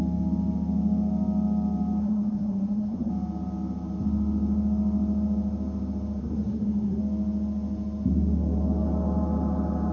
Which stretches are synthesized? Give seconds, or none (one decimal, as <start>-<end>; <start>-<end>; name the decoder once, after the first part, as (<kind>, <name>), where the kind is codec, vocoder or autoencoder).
2.0-3.1 (codec, SNAC); 6.2-7.0